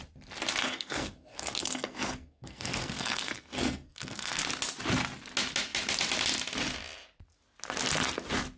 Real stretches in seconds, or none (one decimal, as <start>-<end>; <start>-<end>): 0.0-0.6; 4.4-8.6

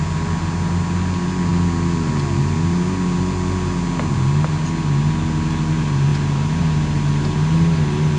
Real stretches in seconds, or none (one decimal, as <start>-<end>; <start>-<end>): 0.0-8.2

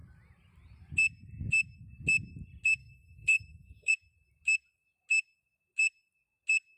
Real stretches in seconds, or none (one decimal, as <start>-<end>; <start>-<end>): 0.0-2.8; 3.9-6.8

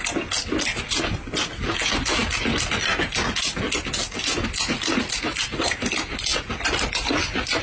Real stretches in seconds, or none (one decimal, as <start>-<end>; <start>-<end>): 0.0-7.6